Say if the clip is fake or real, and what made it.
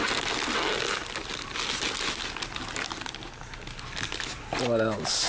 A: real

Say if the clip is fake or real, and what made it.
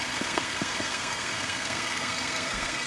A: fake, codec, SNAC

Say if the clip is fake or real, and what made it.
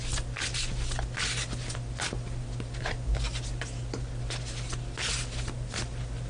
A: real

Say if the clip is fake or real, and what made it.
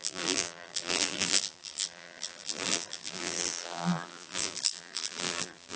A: fake, vocoder, BigVGAN v2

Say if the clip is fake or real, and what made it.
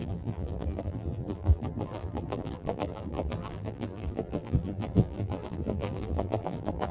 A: fake, vocoder, BigVGAN v2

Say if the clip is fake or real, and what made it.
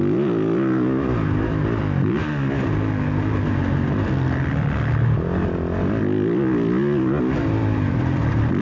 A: real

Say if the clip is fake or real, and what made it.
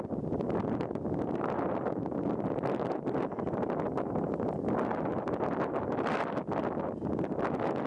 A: real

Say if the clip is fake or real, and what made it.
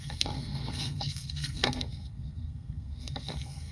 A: fake, codec, SNAC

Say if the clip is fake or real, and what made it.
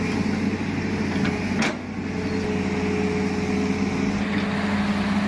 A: real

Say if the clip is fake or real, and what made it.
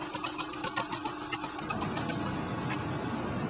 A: real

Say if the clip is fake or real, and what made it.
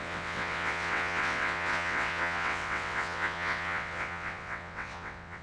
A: fake, vocoder, WaveNeXt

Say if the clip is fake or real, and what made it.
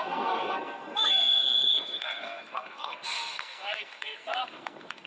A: fake, codec, SNAC